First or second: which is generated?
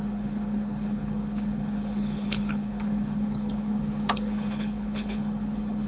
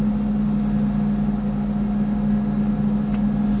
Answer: first